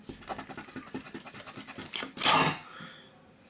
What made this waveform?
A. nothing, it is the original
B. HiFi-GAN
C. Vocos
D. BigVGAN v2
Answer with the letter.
A